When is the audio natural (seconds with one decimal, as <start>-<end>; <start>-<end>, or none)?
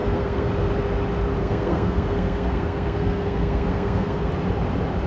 0.5-1.4; 4.3-5.1